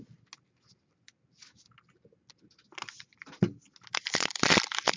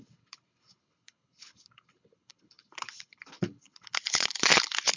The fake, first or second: second